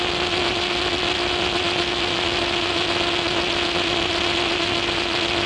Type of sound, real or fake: real